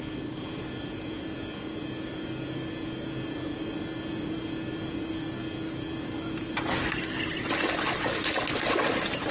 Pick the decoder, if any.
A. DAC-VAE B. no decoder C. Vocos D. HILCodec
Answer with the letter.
B